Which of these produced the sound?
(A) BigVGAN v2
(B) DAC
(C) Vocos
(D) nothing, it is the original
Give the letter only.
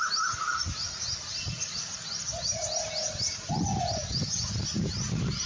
D